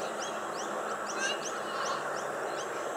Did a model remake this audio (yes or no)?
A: no